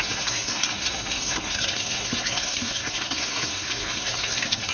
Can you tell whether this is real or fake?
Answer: fake